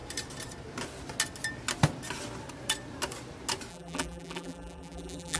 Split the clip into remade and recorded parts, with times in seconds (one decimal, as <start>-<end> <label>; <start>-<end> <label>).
0.0-3.7 recorded; 3.7-5.4 remade